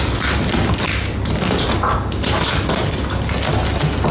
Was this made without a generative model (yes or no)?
yes